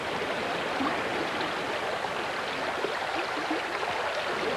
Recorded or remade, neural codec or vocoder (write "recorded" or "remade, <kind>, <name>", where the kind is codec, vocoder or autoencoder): recorded